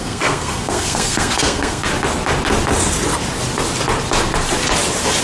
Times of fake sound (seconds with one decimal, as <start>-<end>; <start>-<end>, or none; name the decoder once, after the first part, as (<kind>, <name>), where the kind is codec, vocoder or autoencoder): 0.0-1.9 (codec, SNAC)